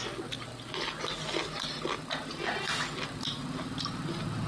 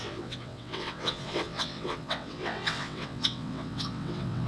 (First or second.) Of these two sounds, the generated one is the second